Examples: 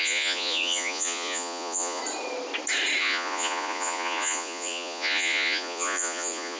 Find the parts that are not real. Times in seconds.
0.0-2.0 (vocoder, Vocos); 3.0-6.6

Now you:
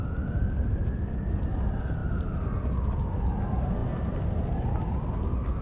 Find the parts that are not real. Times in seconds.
none

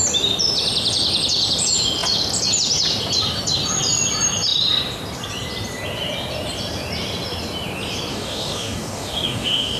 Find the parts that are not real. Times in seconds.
8.1-9.8 (codec, DAC)